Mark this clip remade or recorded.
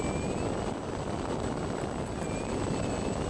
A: recorded